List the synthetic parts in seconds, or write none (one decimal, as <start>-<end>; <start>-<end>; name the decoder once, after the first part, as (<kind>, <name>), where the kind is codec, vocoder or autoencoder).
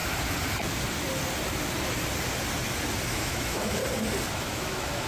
3.1-3.8 (autoencoder, DAC-VAE); 4.3-5.1